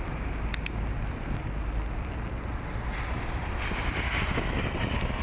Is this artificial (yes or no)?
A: no